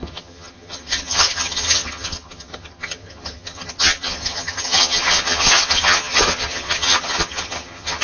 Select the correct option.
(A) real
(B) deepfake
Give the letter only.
B